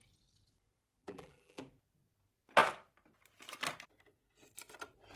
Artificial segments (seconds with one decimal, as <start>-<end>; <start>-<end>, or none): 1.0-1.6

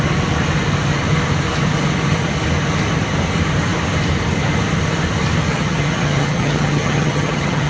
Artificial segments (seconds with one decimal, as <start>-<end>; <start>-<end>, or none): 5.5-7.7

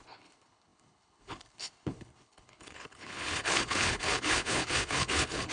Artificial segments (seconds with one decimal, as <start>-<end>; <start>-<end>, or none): 0.0-5.5

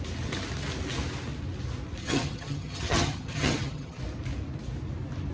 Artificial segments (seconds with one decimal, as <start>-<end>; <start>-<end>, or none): 2.0-4.0

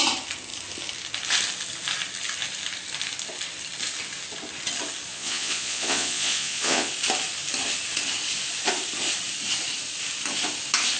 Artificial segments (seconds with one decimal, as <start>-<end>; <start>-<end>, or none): 5.1-6.9